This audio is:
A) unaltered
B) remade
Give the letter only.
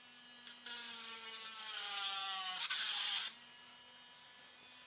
B